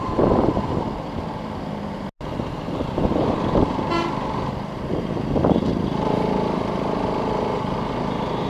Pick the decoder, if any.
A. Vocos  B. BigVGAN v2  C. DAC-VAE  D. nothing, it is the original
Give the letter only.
D